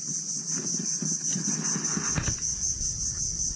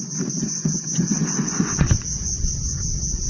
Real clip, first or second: first